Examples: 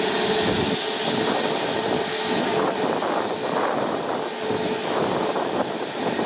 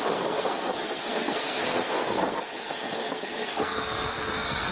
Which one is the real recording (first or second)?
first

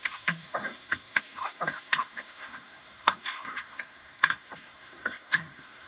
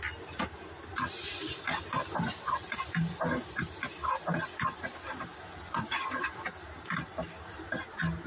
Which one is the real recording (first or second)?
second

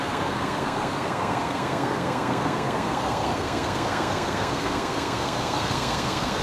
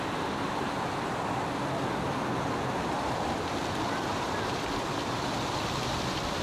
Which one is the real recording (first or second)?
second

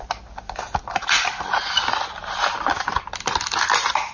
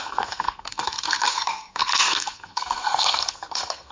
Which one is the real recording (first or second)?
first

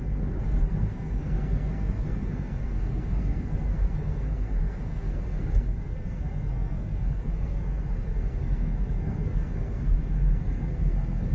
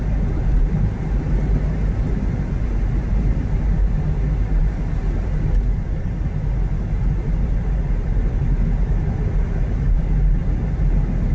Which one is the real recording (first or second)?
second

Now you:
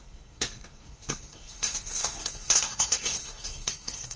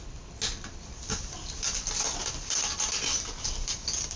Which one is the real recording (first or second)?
second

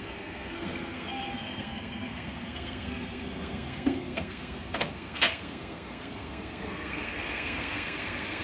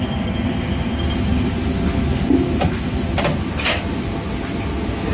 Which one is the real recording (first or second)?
second